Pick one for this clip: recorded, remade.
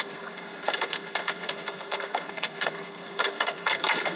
remade